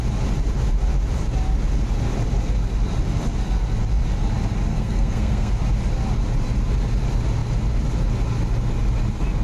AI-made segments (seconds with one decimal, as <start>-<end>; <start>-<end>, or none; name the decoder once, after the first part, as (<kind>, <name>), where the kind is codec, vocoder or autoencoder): 4.7-5.5 (codec, SNAC)